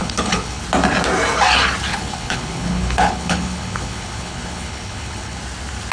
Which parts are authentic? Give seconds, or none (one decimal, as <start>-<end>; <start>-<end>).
0.6-1.9; 5.4-5.9